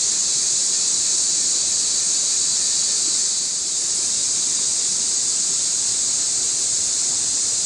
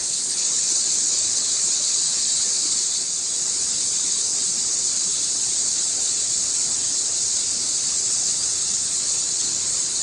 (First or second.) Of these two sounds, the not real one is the second